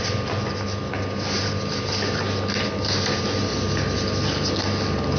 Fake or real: real